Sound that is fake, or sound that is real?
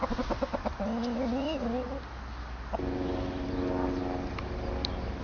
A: real